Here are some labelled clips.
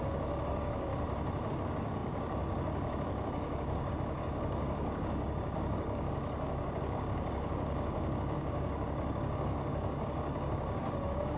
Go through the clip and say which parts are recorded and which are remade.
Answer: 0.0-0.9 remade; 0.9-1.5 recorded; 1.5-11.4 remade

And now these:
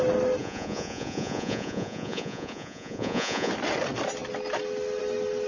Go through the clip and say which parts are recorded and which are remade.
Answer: 0.0-0.4 recorded; 0.4-3.5 remade; 3.5-5.5 recorded

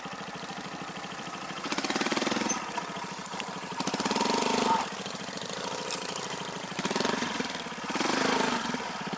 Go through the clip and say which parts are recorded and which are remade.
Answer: 0.0-9.2 remade